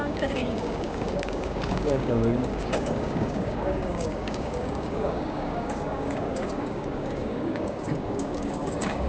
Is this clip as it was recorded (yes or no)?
no